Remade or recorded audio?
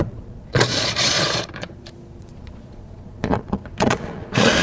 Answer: remade